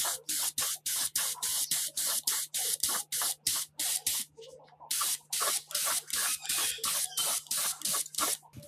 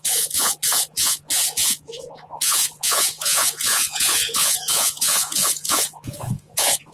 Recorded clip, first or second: first